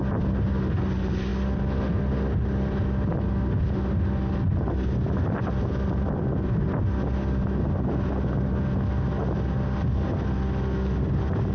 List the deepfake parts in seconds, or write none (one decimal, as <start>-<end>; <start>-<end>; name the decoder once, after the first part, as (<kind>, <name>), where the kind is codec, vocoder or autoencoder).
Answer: none